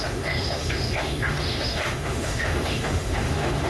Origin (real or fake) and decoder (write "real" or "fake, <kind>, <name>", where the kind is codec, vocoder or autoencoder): fake, autoencoder, DAC-VAE